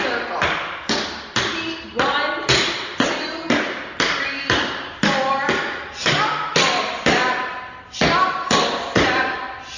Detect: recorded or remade recorded